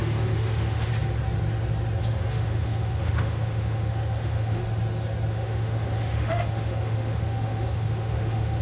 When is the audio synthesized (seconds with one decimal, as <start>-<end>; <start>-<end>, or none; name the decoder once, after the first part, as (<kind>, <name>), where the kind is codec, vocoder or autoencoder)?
0.0-0.9 (autoencoder, DAC-VAE); 2.0-4.6; 5.3-8.6